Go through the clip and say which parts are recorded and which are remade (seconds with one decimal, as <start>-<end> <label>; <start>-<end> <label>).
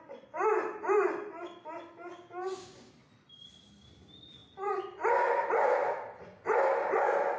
0.0-2.1 recorded; 2.1-2.9 remade; 2.9-7.4 recorded